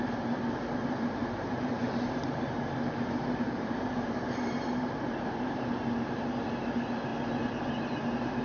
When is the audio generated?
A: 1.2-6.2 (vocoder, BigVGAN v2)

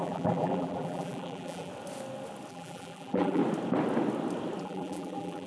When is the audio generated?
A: 0.0-1.7 (vocoder, BigVGAN v2); 2.5-3.4; 4.6-5.5

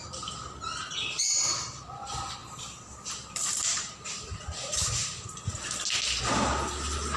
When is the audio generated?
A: 2.4-4.4 (vocoder, BigVGAN v2)

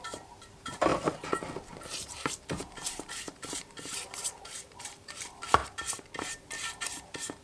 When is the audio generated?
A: 0.0-0.9 (vocoder, BigVGAN v2); 1.6-5.6; 6.2-7.4

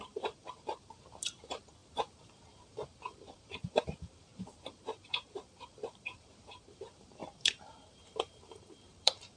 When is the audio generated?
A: 0.0-9.4 (vocoder, BigVGAN v2)